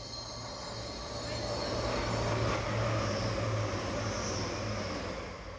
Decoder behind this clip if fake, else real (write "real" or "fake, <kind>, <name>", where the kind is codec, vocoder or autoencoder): real